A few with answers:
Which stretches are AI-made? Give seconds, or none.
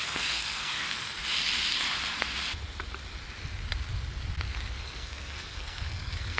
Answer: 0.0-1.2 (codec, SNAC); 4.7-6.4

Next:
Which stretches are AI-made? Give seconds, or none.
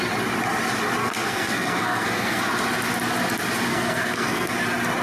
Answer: 1.0-2.4 (codec, SNAC); 3.7-4.5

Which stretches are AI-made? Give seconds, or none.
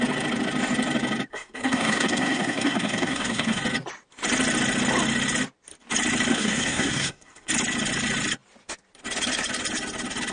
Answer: 1.3-3.6 (codec, SNAC); 6.3-7.5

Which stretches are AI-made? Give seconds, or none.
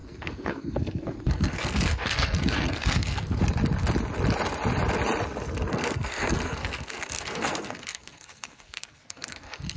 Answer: 0.0-3.4 (codec, SNAC); 5.7-9.8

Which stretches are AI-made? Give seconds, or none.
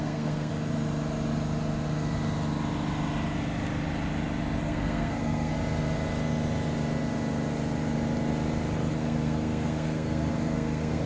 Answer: 0.0-0.5 (codec, SNAC); 4.6-5.5; 8.9-11.1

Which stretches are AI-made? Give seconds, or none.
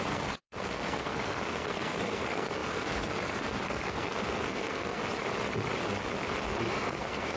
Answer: 0.0-5.0 (codec, SNAC); 6.7-7.4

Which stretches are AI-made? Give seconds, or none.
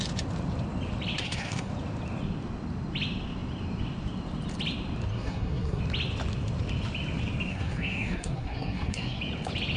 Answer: 1.2-1.7 (codec, SNAC); 5.1-5.8; 7.5-9.2